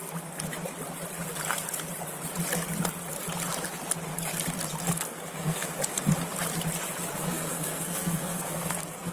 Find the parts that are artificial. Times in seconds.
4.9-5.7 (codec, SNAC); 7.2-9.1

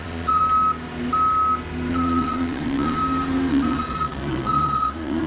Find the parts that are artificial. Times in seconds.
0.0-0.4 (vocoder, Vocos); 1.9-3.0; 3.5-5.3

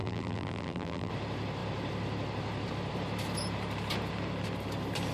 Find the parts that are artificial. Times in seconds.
0.0-1.1 (vocoder, BigVGAN v2)

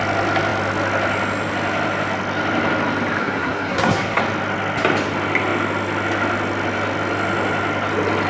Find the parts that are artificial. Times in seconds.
3.2-4.2 (codec, SNAC)

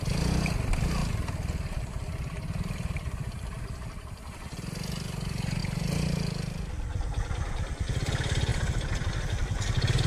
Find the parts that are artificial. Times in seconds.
none

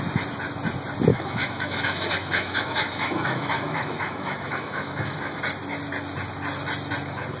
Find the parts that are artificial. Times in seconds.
1.1-5.4 (autoencoder, DAC-VAE)

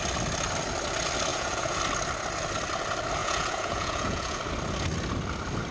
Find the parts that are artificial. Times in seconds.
1.3-1.8 (vocoder, Vocos); 3.2-4.4

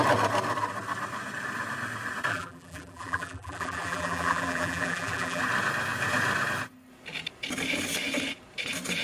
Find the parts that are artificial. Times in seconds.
2.3-5.4 (vocoder, BigVGAN v2)